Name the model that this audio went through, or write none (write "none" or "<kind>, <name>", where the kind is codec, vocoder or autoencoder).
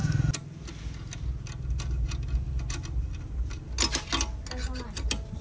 none